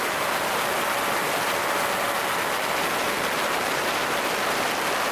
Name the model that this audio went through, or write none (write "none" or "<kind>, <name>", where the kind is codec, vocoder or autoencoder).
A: vocoder, BigVGAN v2